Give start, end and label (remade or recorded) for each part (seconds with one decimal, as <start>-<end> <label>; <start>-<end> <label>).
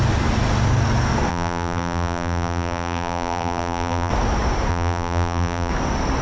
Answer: 0.0-1.3 recorded; 1.3-4.1 remade; 4.1-4.7 recorded; 4.7-5.7 remade; 5.7-6.2 recorded